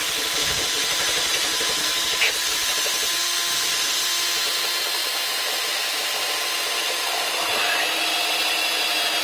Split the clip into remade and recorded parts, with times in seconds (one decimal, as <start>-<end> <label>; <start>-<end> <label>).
0.0-1.8 recorded; 1.8-2.3 remade; 2.3-9.2 recorded